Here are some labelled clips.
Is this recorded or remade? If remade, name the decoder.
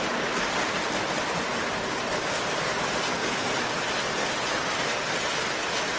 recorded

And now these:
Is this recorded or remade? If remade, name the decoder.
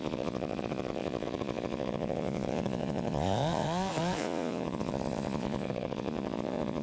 remade, vocoder, Vocos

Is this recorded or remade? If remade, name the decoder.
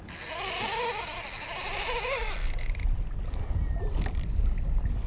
recorded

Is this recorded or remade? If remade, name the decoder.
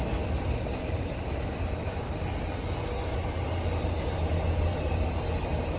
recorded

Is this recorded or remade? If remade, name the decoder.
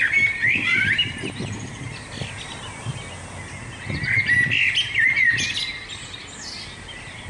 recorded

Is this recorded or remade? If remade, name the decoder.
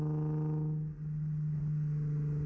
recorded